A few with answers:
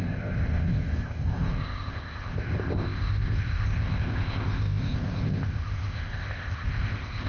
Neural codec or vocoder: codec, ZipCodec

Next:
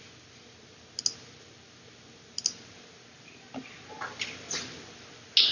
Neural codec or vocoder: none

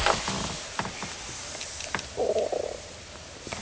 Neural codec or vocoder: none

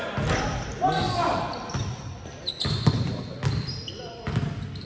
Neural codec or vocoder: none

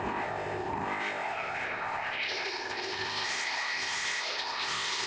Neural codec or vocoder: codec, ZipCodec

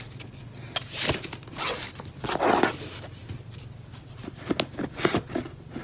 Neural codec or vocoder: none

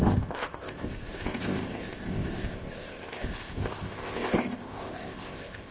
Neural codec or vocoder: codec, ZipCodec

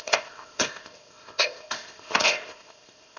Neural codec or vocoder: codec, ZipCodec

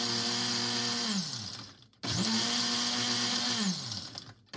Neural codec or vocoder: none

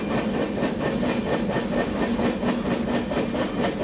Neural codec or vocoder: none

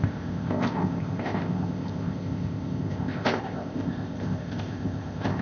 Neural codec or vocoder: codec, ZipCodec